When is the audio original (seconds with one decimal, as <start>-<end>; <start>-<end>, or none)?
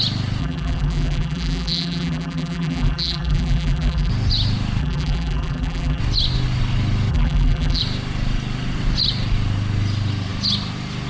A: 0.0-0.4; 4.1-4.8; 6.0-7.1; 7.8-11.1